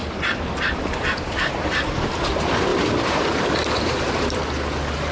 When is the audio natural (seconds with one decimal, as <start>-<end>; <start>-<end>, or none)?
2.1-2.7; 4.5-5.1